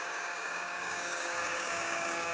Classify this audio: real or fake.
fake